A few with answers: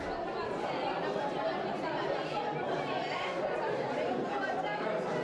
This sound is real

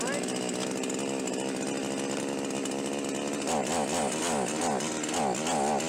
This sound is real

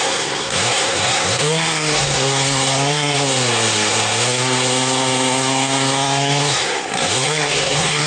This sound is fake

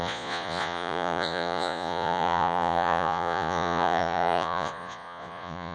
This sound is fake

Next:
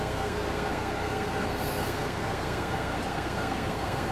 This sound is fake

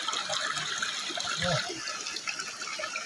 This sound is real